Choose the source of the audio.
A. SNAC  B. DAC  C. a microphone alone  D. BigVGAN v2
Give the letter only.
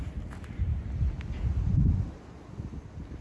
C